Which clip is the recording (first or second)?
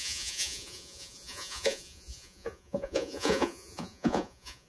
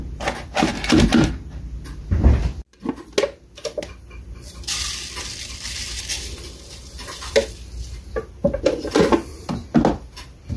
second